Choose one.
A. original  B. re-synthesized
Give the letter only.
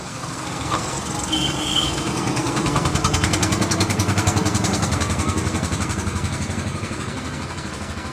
B